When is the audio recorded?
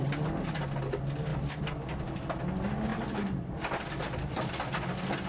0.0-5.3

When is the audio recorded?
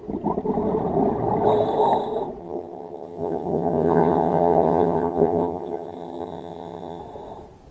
0.0-2.4; 7.0-7.7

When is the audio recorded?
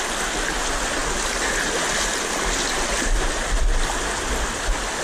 0.0-5.0